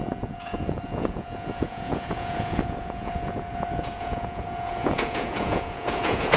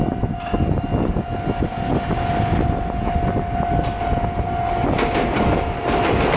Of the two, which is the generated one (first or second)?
first